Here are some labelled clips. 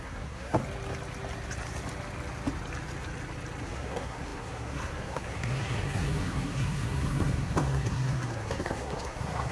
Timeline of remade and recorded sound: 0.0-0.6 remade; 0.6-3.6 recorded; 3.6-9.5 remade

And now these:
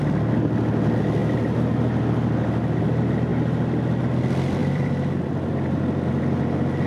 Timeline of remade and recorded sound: 0.0-4.6 recorded; 4.6-6.2 remade; 6.2-6.9 recorded

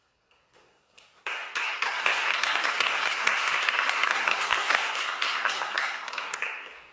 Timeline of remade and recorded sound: 0.0-6.9 remade

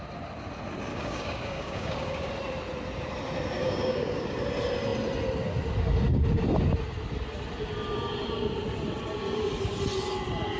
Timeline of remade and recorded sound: 0.0-0.9 recorded; 0.9-2.3 remade; 2.3-3.6 recorded; 3.6-4.4 remade; 4.4-10.6 recorded

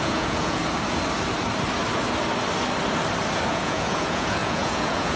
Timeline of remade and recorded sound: 0.0-0.6 remade; 0.6-3.5 recorded; 3.5-5.2 remade

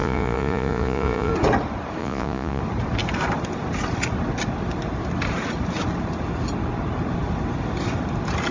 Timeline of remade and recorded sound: 0.0-1.3 remade; 1.3-2.0 recorded; 2.0-2.6 remade; 2.6-8.5 recorded

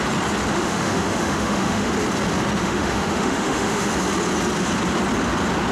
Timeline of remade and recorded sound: 0.0-0.5 recorded; 0.5-1.9 remade; 1.9-2.6 recorded; 2.6-3.9 remade; 3.9-5.7 recorded